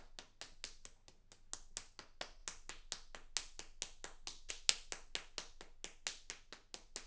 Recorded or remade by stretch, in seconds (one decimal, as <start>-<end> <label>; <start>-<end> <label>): 0.0-7.1 recorded